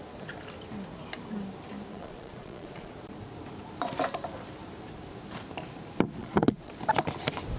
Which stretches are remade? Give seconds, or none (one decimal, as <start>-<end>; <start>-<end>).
1.9-2.9; 6.2-6.7